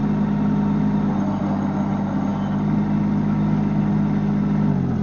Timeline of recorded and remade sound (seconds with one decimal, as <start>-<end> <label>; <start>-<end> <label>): 0.0-5.0 recorded